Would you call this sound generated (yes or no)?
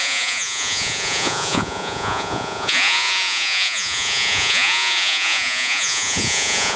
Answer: yes